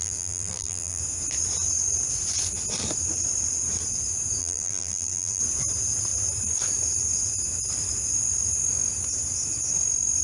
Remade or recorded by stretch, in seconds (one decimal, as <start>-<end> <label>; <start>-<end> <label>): 0.0-1.0 remade; 1.0-4.4 recorded; 4.4-5.4 remade; 5.4-10.2 recorded